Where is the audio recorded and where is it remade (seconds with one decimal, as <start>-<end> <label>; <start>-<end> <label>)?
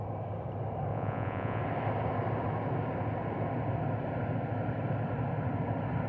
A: 0.0-0.9 recorded; 0.9-1.6 remade; 1.6-6.1 recorded